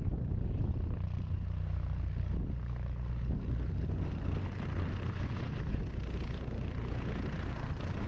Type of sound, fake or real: real